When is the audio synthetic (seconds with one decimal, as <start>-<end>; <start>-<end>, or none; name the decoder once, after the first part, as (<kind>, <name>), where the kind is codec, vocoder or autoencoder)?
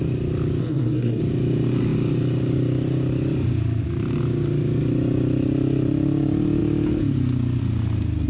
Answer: 0.6-1.2 (codec, SNAC)